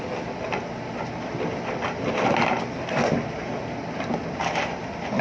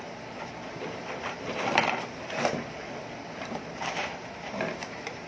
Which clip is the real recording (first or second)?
first